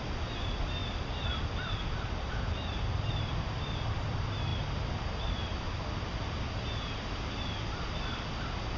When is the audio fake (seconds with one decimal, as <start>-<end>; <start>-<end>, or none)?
none